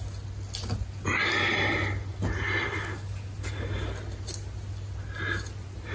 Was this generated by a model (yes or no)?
no